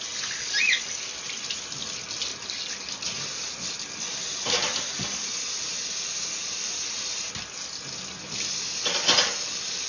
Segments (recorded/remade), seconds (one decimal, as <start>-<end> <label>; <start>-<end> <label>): 0.0-9.9 recorded

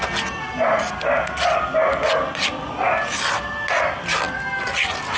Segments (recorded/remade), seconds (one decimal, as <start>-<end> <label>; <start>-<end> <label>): 0.0-5.2 recorded

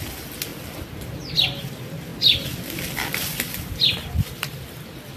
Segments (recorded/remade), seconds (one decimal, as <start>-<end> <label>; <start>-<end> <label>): 0.0-5.2 recorded

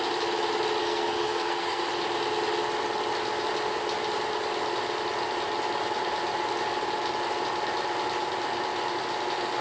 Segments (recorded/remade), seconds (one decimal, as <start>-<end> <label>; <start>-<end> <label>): 0.0-0.8 recorded; 0.8-1.8 remade; 1.8-9.6 recorded

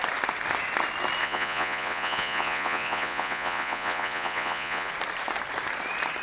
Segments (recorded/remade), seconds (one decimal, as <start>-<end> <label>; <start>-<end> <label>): 0.0-1.2 recorded; 1.2-4.9 remade; 4.9-6.2 recorded

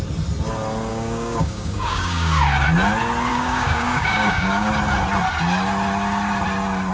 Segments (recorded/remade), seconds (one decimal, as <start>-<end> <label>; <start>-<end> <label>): 0.0-0.9 recorded; 0.9-2.4 remade; 2.4-3.3 recorded; 3.3-4.7 remade; 4.7-6.9 recorded

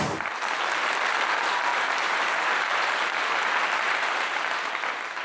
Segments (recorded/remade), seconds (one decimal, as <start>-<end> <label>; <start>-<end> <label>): 0.0-1.7 recorded; 1.7-4.8 remade; 4.8-5.2 recorded

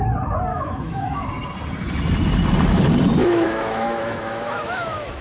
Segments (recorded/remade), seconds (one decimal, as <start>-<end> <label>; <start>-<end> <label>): 0.0-0.5 recorded; 0.5-1.3 remade; 1.3-3.2 recorded; 3.2-5.2 remade